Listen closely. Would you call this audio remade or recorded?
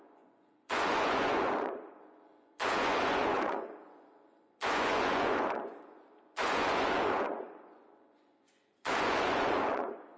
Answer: remade